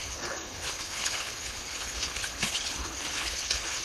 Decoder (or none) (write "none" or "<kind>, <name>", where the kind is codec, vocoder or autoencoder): codec, HILCodec